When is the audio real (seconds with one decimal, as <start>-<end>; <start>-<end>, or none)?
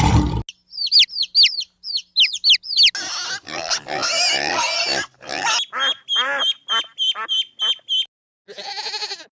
0.0-9.3